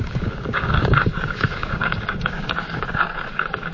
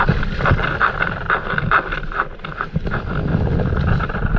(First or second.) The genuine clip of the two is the second